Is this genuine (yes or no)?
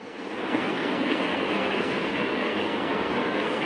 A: no